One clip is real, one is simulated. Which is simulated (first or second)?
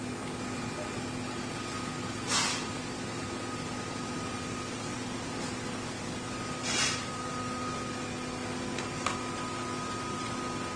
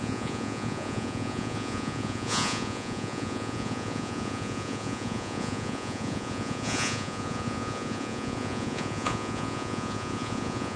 second